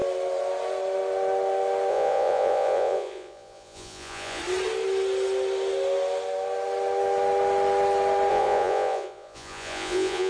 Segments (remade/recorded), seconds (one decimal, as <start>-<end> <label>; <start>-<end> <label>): 0.0-1.9 recorded; 1.9-4.4 remade; 4.4-8.3 recorded; 8.3-10.3 remade